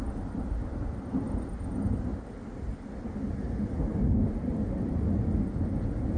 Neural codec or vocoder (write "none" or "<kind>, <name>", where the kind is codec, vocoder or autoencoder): none